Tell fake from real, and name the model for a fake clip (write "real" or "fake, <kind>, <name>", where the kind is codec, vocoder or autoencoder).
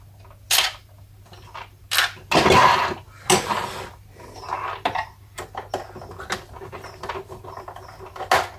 real